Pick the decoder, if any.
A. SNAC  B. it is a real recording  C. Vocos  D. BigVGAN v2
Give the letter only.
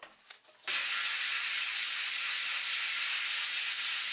B